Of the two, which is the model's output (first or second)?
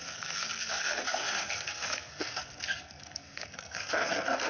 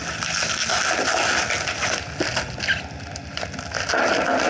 first